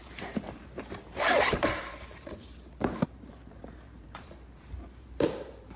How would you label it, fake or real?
fake